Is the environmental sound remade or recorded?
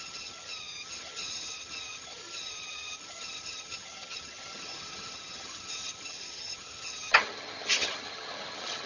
remade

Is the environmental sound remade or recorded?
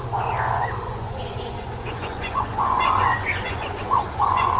remade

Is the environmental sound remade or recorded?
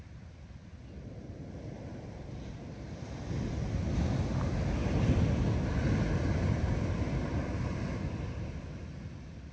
recorded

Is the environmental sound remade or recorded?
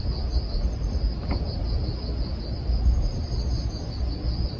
recorded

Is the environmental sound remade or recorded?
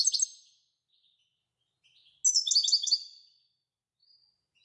recorded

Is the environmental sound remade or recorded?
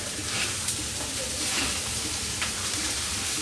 remade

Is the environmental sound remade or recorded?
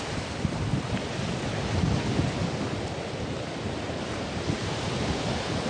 recorded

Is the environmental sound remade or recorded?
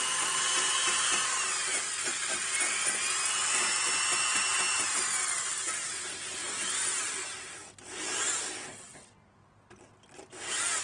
recorded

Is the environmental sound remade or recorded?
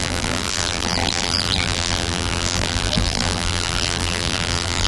remade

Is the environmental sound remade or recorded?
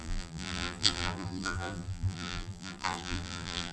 remade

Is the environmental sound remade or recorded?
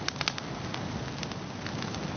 recorded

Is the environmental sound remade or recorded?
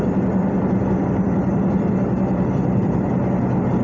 recorded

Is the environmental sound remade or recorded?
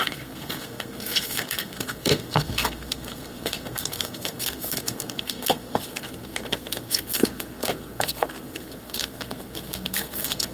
remade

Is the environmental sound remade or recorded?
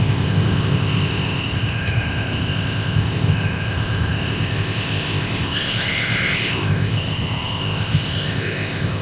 remade